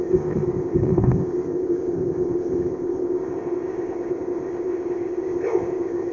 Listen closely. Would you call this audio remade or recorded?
remade